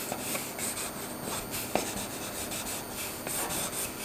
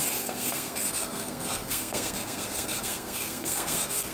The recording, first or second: first